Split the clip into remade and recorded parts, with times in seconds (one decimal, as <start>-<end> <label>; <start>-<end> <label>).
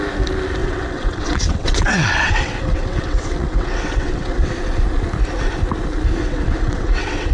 0.0-0.6 recorded; 0.6-4.5 remade; 4.5-6.2 recorded; 6.2-7.3 remade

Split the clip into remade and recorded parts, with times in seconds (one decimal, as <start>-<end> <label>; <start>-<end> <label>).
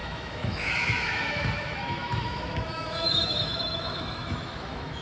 0.0-5.0 remade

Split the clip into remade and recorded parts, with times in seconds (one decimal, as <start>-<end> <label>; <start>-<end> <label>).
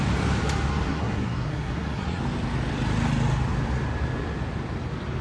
0.0-0.7 recorded; 0.7-2.2 remade; 2.2-5.2 recorded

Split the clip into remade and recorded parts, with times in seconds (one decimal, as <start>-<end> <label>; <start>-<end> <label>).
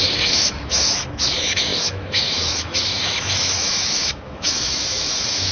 0.0-5.5 remade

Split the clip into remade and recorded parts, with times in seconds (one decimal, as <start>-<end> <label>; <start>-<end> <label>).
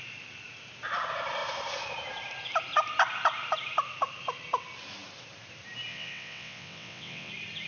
0.0-5.9 recorded; 5.9-7.3 remade; 7.3-7.7 recorded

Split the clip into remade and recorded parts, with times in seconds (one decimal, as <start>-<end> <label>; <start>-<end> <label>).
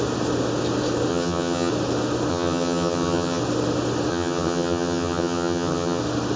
0.0-1.1 recorded; 1.1-1.7 remade; 1.7-2.3 recorded; 2.3-3.4 remade; 3.4-4.1 recorded; 4.1-6.0 remade; 6.0-6.4 recorded